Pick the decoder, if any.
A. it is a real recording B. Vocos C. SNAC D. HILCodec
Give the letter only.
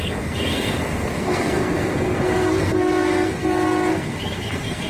C